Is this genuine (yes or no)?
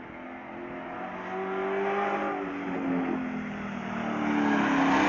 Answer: yes